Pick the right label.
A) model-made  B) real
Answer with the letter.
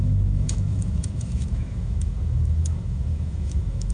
A